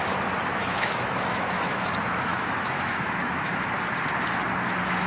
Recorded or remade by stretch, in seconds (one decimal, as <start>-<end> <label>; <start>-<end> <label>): 0.0-0.6 recorded; 0.6-1.9 remade; 1.9-2.3 recorded; 2.3-3.6 remade; 3.6-5.1 recorded